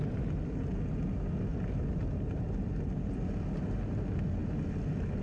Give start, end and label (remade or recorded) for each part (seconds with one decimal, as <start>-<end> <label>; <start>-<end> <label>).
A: 0.0-1.5 recorded; 1.5-2.7 remade; 2.7-5.2 recorded